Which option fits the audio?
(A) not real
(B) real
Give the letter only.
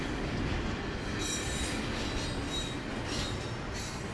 B